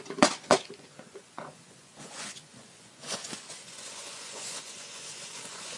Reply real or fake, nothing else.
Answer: fake